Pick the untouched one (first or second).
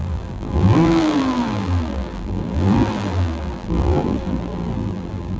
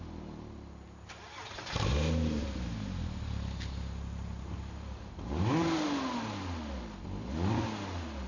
second